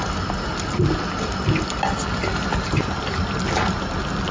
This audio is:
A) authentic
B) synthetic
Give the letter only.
A